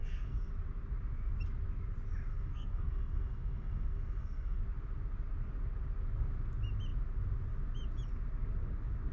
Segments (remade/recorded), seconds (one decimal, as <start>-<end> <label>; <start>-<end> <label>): 0.0-0.5 remade; 0.5-2.3 recorded; 2.3-4.6 remade; 4.6-9.1 recorded